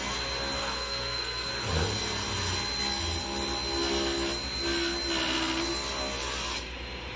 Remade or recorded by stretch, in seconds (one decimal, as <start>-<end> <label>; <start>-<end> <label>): 0.0-0.6 recorded; 0.6-1.5 remade; 1.5-7.2 recorded